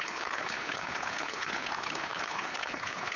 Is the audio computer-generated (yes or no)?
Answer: yes